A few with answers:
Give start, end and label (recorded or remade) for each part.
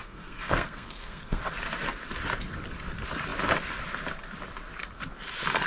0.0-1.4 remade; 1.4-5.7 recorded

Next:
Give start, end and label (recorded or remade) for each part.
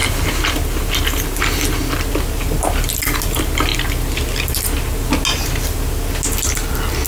0.0-7.1 recorded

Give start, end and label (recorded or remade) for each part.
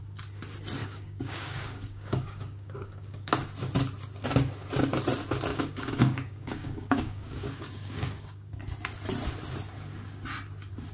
0.0-0.8 recorded; 0.8-3.3 remade; 3.3-5.5 recorded; 5.5-8.5 remade; 8.5-10.9 recorded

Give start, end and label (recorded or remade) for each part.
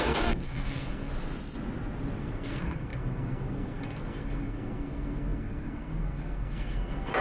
0.0-1.1 remade; 1.1-2.2 recorded; 2.2-7.2 remade